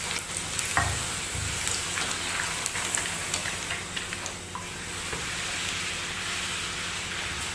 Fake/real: real